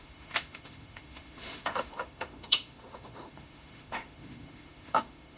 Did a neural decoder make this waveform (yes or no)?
yes